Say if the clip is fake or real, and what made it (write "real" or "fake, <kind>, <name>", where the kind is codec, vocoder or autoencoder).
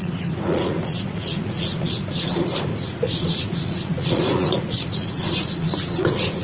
fake, vocoder, Vocos